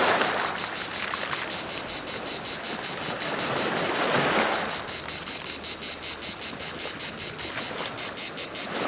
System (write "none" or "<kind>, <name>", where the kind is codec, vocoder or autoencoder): none